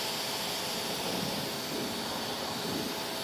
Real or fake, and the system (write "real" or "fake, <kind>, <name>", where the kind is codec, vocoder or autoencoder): real